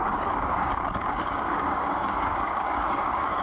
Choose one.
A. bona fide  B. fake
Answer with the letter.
B